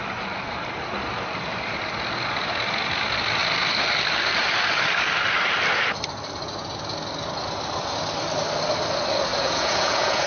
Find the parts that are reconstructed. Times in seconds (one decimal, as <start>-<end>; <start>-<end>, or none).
9.3-10.3